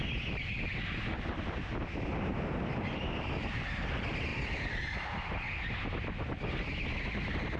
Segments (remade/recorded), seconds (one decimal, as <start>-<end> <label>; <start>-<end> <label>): 0.0-7.6 recorded